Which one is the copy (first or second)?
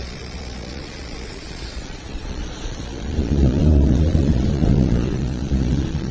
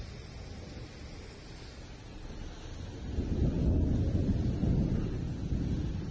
first